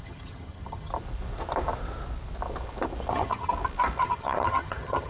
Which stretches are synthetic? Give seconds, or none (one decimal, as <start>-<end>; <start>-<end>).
0.0-0.9; 3.1-3.5; 4.0-5.1